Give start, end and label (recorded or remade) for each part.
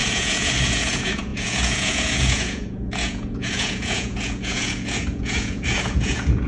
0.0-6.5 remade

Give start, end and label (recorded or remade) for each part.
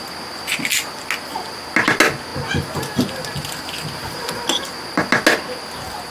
0.0-6.1 recorded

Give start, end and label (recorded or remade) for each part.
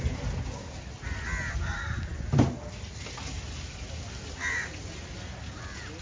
0.0-6.0 recorded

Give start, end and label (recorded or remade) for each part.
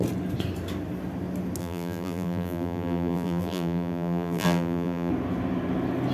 0.0-1.6 recorded; 1.6-5.1 remade; 5.1-6.1 recorded